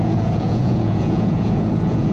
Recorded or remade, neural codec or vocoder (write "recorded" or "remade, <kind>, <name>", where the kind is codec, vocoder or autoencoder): remade, vocoder, Vocos